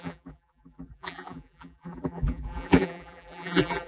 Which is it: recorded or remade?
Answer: remade